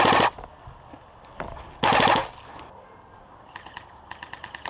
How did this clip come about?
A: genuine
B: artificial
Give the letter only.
A